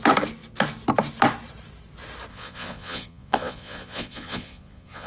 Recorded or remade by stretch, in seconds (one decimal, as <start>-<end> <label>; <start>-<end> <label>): 0.0-2.3 recorded; 2.3-5.1 remade